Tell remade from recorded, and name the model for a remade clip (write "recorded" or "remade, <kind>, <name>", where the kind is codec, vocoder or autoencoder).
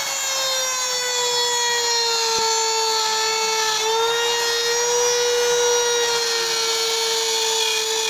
recorded